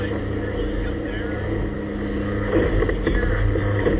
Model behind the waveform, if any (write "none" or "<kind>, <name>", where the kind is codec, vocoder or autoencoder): none